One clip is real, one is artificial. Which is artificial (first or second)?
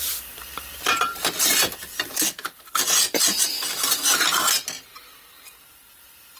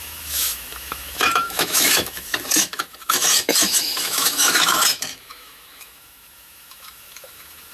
second